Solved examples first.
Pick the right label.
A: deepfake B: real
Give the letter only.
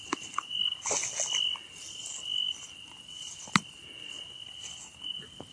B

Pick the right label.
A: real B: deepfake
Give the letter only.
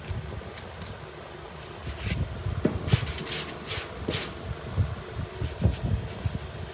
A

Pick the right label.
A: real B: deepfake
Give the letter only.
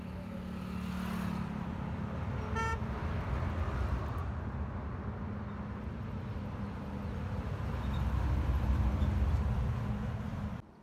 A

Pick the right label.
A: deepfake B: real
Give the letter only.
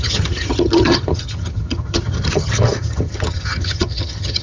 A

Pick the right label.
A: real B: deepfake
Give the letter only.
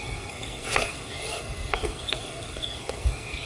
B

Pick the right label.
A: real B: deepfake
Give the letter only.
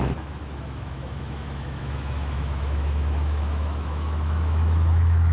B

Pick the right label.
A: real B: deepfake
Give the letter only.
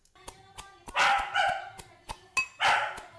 A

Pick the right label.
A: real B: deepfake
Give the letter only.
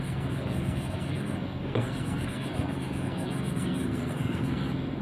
B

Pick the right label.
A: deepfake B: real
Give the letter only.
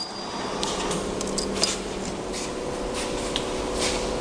B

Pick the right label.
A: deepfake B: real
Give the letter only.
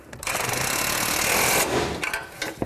B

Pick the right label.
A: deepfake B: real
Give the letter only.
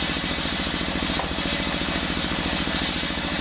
A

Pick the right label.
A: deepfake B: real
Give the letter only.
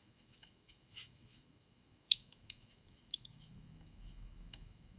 A